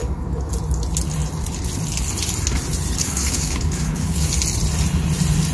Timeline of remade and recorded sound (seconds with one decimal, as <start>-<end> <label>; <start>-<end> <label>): 0.0-0.5 remade; 0.5-3.0 recorded; 3.0-4.3 remade; 4.3-5.5 recorded

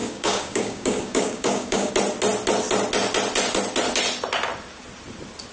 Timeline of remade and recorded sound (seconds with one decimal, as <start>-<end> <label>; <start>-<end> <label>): 0.0-1.9 remade; 1.9-5.5 recorded

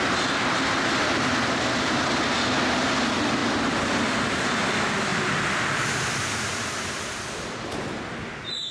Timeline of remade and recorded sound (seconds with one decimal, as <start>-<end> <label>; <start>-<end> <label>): 0.0-8.7 recorded

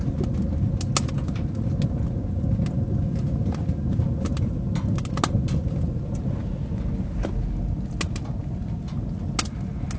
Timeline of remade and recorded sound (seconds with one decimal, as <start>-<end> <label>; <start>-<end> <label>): 0.0-10.0 recorded

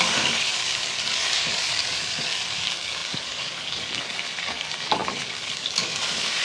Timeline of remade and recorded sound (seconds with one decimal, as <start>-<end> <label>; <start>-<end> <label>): 0.0-6.4 remade

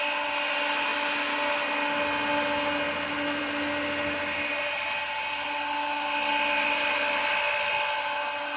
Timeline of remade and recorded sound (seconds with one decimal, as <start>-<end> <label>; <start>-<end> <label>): 0.0-8.6 recorded

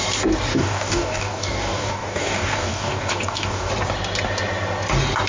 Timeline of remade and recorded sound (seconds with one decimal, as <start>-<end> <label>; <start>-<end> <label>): 0.0-0.5 recorded; 0.5-3.7 remade; 3.7-5.3 recorded